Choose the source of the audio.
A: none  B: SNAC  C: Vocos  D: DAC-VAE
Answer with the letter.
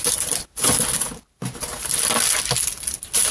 A